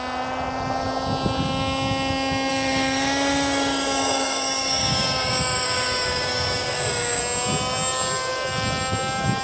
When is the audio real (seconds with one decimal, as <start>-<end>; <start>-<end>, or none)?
0.0-2.5; 7.2-9.4